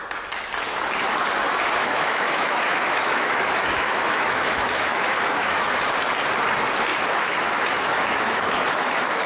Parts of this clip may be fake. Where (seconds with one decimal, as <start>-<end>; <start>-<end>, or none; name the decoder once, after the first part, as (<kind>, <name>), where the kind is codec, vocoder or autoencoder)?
1.8-5.9 (autoencoder, DAC-VAE); 6.9-9.3